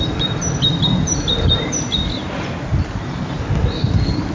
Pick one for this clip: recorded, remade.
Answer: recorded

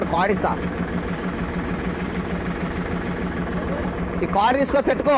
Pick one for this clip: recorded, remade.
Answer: remade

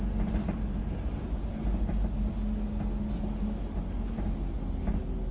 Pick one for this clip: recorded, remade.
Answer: recorded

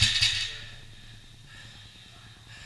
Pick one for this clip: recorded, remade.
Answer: recorded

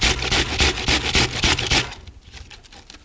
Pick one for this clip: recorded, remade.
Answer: recorded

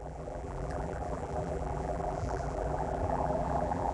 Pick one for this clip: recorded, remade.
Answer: remade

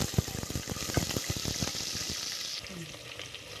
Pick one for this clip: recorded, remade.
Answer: recorded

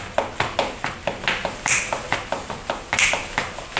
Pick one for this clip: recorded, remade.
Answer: recorded